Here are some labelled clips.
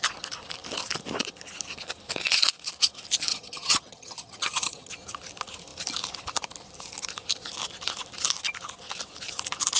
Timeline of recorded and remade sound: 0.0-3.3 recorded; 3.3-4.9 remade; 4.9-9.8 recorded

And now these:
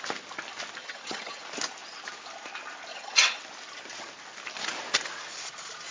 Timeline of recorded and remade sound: 0.0-0.8 recorded; 0.8-1.4 remade; 1.4-2.9 recorded; 2.9-3.4 remade; 3.4-5.9 recorded